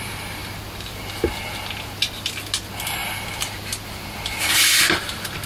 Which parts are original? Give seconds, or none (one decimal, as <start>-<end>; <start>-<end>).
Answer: 0.0-3.0; 4.5-5.5